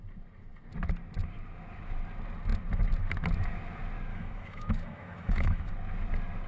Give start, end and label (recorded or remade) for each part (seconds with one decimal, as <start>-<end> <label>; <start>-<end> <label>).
0.0-4.1 recorded; 4.1-5.7 remade; 5.7-6.5 recorded